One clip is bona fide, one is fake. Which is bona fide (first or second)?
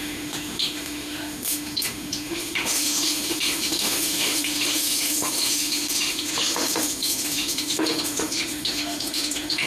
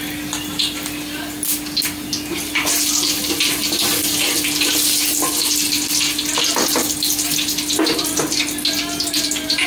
second